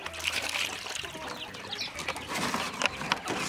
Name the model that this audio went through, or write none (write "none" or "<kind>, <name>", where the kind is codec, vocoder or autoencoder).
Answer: none